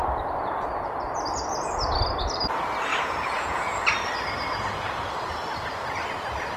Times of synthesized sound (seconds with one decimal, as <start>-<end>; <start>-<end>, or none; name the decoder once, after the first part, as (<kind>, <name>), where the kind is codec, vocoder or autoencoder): 2.9-3.9 (vocoder, Vocos)